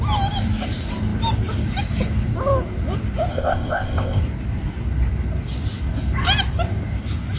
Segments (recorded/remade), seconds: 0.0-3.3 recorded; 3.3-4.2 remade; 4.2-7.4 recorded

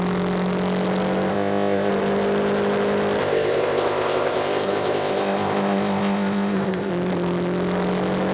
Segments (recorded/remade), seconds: 0.0-1.3 recorded; 1.3-1.9 remade; 1.9-3.2 recorded; 3.2-6.9 remade; 6.9-8.3 recorded

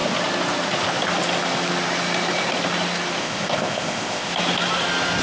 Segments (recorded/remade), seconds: 0.0-3.2 recorded; 3.2-4.3 remade; 4.3-5.2 recorded

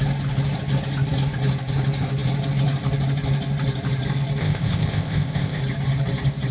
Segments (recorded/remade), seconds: 0.0-4.4 recorded; 4.4-5.6 remade; 5.6-6.5 recorded

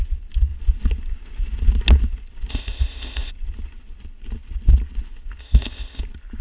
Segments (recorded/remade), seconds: 0.0-2.5 recorded; 2.5-3.3 remade; 3.3-5.4 recorded; 5.4-6.0 remade; 6.0-6.4 recorded

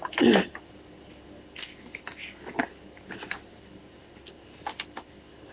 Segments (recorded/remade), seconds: 0.0-5.5 recorded